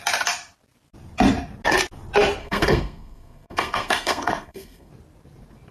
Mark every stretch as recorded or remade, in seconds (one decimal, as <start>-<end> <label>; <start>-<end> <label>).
0.0-2.4 recorded; 2.4-4.9 remade; 4.9-5.7 recorded